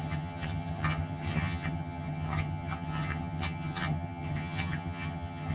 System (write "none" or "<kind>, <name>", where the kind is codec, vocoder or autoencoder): vocoder, HiFi-GAN